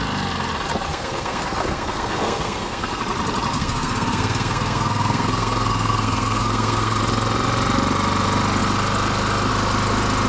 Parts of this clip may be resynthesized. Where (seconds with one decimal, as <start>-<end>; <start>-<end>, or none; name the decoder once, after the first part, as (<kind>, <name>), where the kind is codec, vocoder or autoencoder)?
0.9-3.0 (codec, SNAC); 3.5-7.0